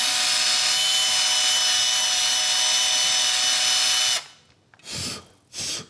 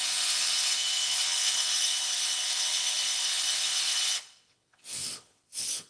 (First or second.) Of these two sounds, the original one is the first